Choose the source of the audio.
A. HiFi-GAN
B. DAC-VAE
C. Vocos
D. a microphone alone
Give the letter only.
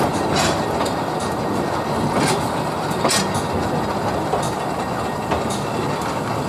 D